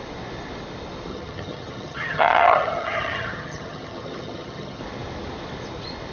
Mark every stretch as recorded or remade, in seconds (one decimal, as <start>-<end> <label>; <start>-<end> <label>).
0.0-1.1 recorded; 1.1-4.8 remade; 4.8-6.1 recorded